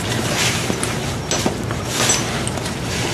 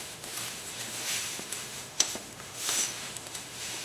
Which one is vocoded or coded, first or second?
second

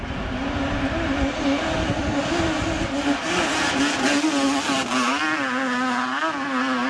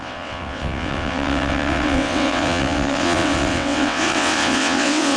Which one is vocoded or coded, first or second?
second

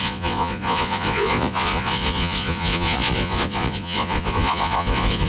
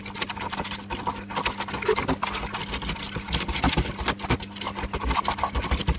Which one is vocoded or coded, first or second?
first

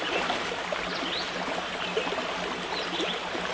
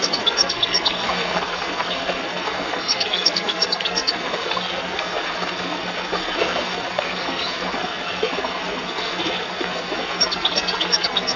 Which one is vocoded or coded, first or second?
second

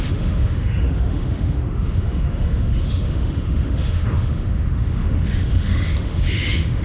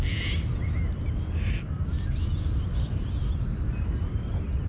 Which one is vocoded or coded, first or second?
first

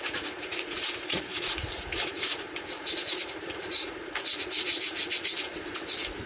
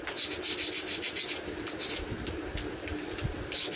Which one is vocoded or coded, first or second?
first